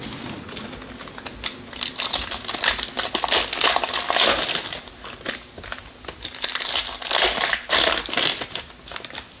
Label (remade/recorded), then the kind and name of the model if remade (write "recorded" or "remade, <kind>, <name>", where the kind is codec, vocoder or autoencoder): recorded